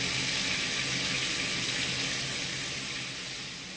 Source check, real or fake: real